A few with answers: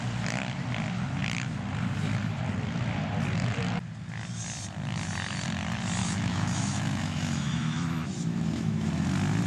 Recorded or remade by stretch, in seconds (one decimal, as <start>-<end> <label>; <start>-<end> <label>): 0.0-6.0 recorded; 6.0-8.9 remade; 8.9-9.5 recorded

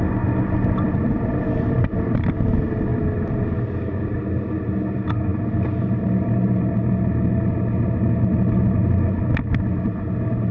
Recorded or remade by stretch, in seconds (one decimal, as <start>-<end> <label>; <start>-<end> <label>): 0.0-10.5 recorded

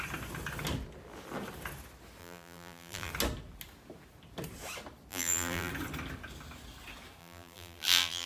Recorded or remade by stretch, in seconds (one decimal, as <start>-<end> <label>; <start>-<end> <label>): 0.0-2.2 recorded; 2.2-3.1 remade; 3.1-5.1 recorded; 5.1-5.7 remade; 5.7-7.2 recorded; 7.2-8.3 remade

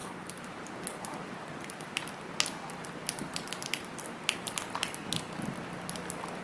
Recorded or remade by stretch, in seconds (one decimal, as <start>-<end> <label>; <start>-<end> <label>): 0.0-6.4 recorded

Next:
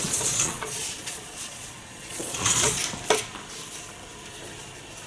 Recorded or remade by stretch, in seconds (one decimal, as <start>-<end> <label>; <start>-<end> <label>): 0.0-2.8 remade; 2.8-5.1 recorded

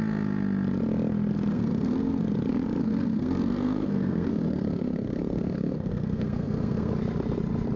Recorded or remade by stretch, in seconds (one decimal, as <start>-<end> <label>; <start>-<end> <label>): 0.0-1.5 recorded; 1.5-2.2 remade; 2.2-2.8 recorded; 2.8-6.9 remade; 6.9-7.8 recorded

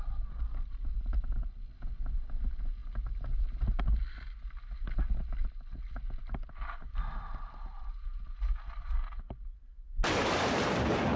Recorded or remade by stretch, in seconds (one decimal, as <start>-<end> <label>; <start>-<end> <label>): 0.0-6.8 recorded; 6.8-7.3 remade; 7.3-11.2 recorded

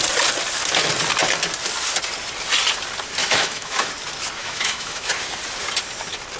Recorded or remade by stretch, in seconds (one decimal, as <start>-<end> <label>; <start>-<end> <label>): 0.0-3.2 recorded; 3.2-3.9 remade; 3.9-4.4 recorded; 4.4-5.1 remade; 5.1-6.4 recorded